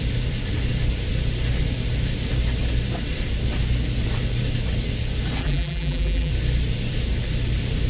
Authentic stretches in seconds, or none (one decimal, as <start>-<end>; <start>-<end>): 0.0-5.4; 6.3-7.9